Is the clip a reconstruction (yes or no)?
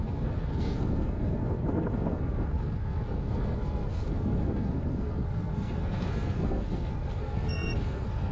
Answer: yes